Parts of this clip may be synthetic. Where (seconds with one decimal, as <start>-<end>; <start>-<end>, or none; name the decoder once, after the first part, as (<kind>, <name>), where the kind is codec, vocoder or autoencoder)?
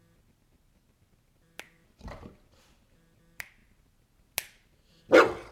none